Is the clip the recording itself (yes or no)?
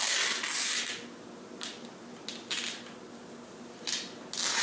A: yes